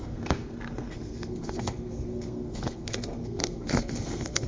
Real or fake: fake